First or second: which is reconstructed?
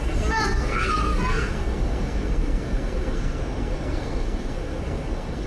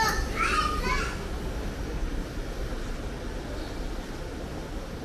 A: first